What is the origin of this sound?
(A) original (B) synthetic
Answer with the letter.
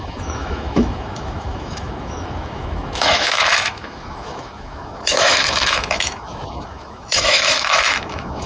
B